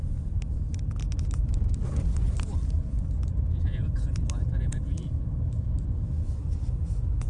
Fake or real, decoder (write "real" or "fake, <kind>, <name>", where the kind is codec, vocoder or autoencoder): real